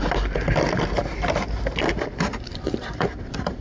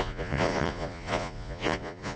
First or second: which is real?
first